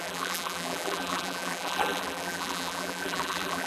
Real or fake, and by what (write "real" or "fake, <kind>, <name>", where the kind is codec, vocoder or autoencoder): fake, vocoder, BigVGAN v2